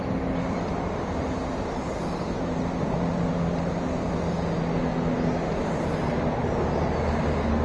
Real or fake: real